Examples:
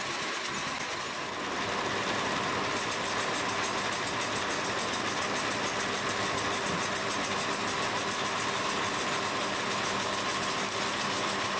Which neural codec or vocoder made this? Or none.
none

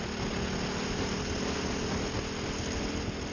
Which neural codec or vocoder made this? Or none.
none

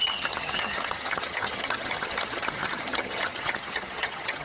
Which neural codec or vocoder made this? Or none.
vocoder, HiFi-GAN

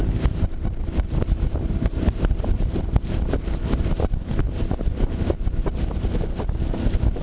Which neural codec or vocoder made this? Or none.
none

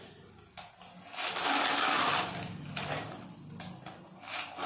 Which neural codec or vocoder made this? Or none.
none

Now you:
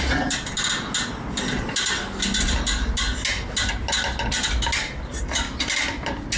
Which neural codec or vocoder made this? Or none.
none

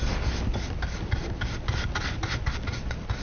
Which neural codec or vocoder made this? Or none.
none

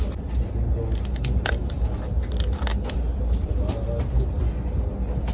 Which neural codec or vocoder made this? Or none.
none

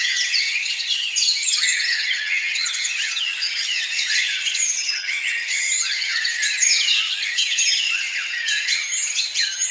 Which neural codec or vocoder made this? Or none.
vocoder, HiFi-GAN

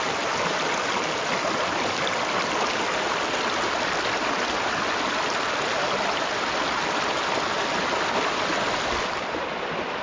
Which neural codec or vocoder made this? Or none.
none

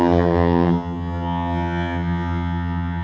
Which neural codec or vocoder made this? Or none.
vocoder, HiFi-GAN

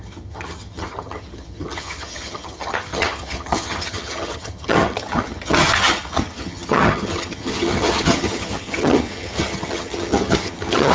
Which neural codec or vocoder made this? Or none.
vocoder, HiFi-GAN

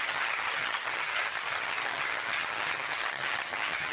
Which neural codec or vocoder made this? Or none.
vocoder, HiFi-GAN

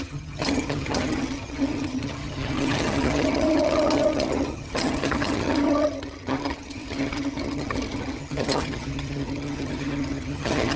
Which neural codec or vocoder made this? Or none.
vocoder, HiFi-GAN